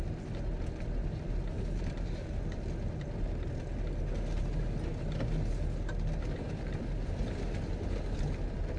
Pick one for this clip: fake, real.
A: real